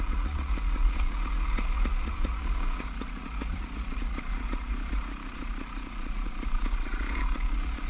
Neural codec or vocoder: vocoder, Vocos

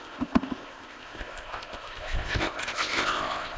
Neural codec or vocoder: codec, ZipCodec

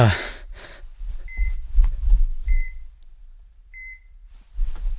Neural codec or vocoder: vocoder, BigVGAN v2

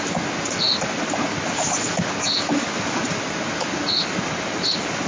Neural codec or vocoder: none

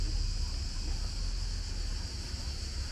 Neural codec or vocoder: none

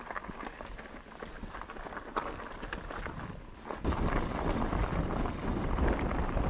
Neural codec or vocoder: none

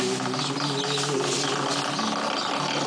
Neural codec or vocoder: none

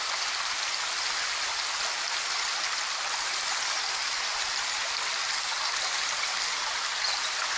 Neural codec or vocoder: none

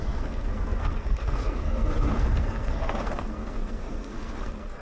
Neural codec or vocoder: codec, SNAC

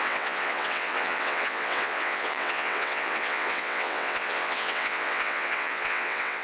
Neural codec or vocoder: vocoder, WaveNeXt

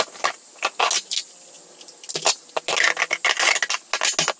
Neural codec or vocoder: none